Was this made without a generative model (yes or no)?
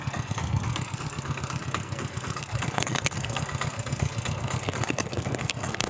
no